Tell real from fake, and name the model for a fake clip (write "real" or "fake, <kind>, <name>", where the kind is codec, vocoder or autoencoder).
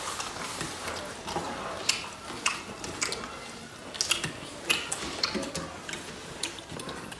real